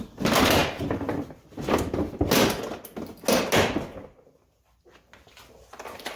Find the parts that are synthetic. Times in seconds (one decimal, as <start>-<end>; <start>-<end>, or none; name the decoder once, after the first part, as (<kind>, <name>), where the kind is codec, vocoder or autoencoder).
none